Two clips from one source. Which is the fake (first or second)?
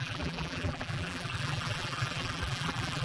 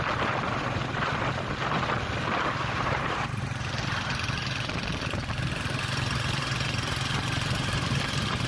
first